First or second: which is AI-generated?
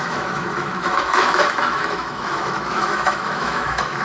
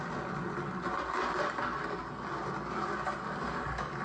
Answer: first